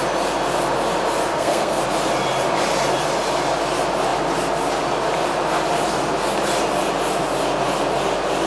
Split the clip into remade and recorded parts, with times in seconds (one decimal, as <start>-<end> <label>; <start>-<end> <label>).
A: 0.0-1.3 recorded; 1.3-1.8 remade; 1.8-8.5 recorded